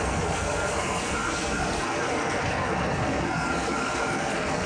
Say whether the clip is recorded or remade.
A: remade